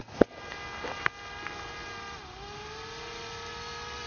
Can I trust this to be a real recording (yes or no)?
yes